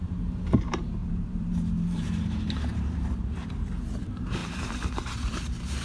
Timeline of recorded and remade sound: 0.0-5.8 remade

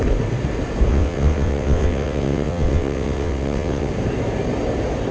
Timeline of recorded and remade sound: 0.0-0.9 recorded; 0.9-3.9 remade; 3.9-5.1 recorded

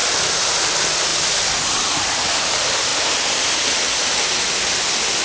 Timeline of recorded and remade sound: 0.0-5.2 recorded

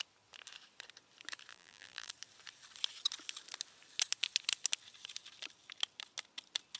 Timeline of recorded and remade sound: 0.0-1.5 recorded; 1.5-2.1 remade; 2.1-6.8 recorded

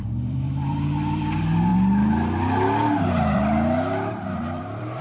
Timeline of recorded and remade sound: 0.0-1.7 remade; 1.7-4.1 recorded; 4.1-5.0 remade

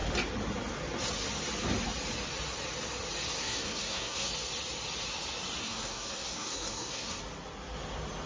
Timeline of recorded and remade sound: 0.0-3.4 recorded; 3.4-4.3 remade; 4.3-5.6 recorded; 5.6-7.2 remade; 7.2-8.3 recorded